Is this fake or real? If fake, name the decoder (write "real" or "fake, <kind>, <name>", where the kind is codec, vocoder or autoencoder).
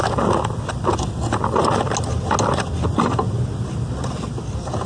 real